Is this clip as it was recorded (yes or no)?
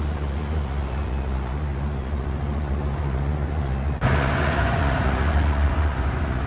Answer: no